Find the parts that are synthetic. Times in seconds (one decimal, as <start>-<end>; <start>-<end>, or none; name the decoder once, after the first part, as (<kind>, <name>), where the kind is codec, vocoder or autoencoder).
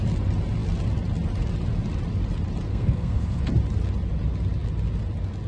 2.7-3.4 (codec, SNAC)